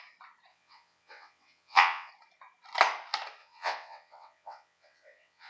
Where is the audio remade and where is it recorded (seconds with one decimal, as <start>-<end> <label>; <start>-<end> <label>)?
0.0-0.5 recorded; 0.5-2.1 remade; 2.1-3.4 recorded; 3.4-5.5 remade